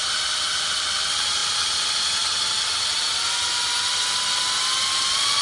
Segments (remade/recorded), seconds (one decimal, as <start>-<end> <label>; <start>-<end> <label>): 0.0-5.4 recorded